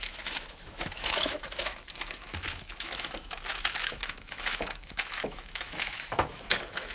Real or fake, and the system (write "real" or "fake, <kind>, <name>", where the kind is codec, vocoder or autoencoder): fake, autoencoder, DAC-VAE